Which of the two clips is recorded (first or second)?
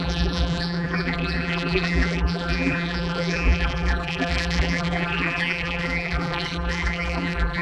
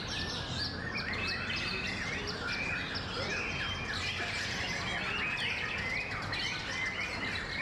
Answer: second